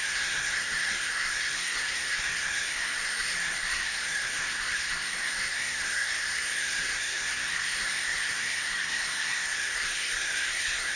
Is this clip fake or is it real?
fake